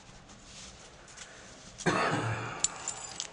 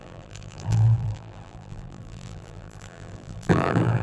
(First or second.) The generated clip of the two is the second